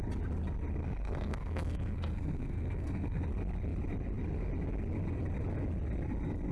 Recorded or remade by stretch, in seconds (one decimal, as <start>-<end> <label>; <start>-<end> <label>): 0.0-0.8 recorded; 0.8-3.2 remade; 3.2-6.5 recorded